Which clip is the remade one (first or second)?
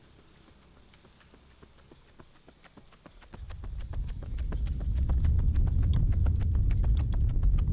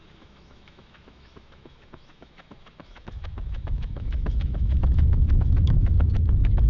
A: second